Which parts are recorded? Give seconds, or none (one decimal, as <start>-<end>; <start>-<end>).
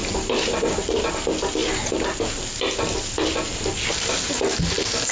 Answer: 0.0-5.1